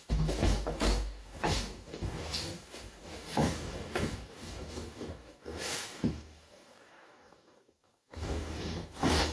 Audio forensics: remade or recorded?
remade